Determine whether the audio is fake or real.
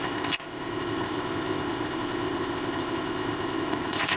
fake